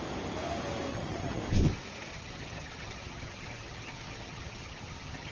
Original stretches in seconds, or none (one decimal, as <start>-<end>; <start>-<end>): 0.0-0.9; 1.4-2.1